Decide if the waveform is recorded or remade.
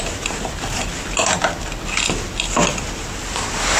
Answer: recorded